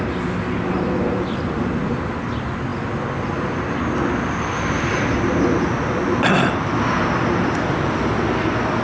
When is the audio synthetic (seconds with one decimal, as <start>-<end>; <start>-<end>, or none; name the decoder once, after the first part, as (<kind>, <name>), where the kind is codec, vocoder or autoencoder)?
none